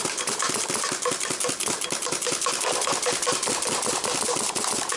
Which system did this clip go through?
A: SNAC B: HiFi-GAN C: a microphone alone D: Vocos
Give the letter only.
C